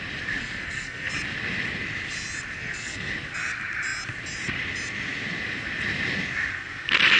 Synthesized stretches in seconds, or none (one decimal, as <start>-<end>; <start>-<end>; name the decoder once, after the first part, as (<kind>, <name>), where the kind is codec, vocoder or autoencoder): 0.4-1.1 (codec, SNAC); 2.6-3.1